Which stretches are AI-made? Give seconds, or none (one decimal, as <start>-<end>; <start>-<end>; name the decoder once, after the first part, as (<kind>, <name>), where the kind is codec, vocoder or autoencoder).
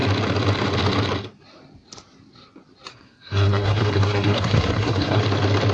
2.9-5.2 (codec, SNAC)